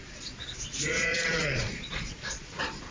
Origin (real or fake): fake